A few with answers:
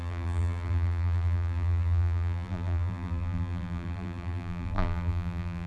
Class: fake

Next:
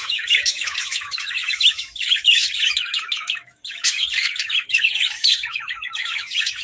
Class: fake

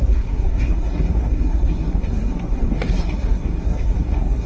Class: fake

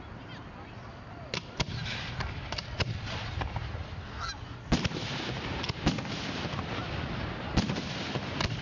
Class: real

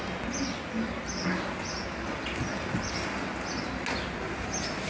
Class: real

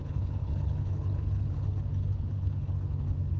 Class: fake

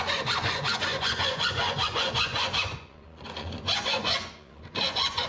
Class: fake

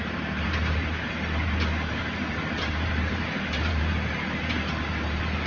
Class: fake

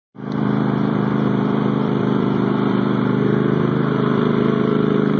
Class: fake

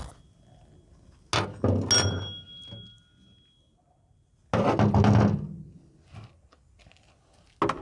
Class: real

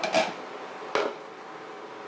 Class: real